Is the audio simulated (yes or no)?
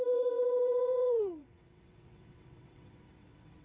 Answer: yes